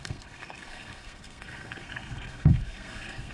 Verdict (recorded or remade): remade